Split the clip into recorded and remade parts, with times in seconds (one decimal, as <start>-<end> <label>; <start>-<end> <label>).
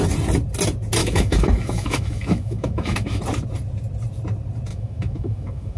0.0-1.0 recorded; 1.0-3.2 remade; 3.2-4.7 recorded; 4.7-5.8 remade